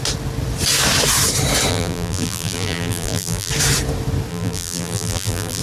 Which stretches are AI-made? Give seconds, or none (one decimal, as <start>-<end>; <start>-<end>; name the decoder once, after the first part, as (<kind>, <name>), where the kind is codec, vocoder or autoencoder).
1.7-3.5 (vocoder, BigVGAN v2); 4.3-5.6